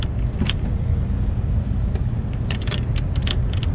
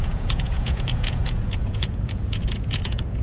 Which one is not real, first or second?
second